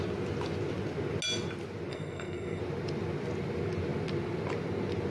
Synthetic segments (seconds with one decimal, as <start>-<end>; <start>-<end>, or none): 1.9-2.6